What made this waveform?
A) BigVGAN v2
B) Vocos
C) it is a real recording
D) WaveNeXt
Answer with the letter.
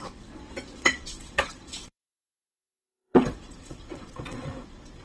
D